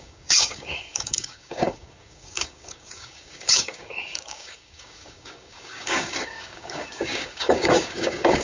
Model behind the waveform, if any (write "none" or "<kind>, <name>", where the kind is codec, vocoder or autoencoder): codec, DAC